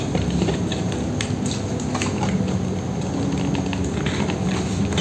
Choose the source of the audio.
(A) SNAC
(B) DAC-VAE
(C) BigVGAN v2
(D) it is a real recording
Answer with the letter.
D